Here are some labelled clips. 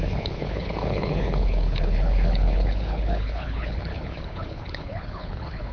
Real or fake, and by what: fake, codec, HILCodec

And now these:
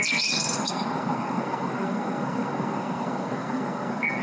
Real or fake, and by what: fake, codec, SNAC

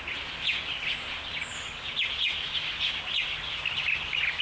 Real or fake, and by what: real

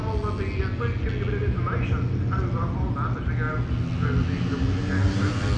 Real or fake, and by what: real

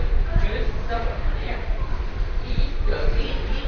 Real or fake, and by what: real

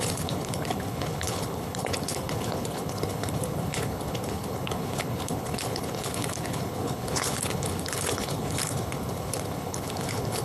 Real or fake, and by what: fake, codec, HILCodec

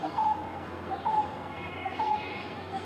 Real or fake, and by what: fake, codec, SNAC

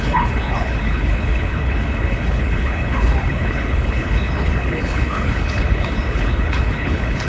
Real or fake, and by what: fake, codec, HILCodec